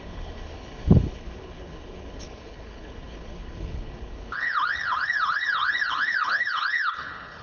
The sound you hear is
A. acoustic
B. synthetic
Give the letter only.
B